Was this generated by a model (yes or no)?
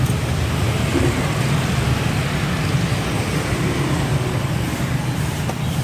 no